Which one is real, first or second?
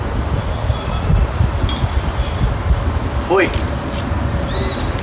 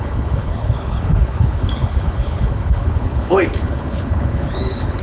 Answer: first